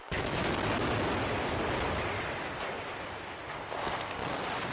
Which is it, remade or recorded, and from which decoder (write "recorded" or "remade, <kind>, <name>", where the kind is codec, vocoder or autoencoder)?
recorded